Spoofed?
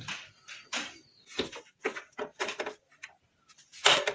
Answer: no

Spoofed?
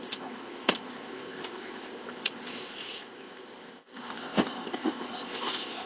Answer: yes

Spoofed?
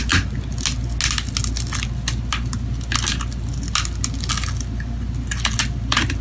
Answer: no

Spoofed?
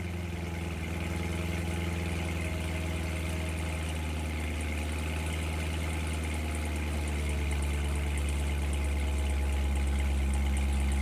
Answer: no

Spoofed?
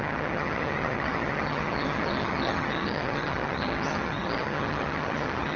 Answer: yes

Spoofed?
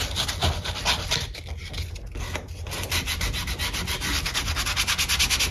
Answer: no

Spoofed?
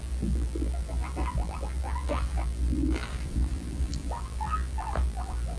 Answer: yes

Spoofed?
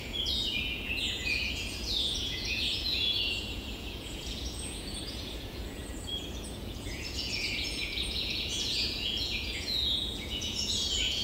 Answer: yes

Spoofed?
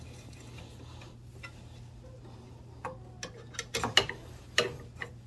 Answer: no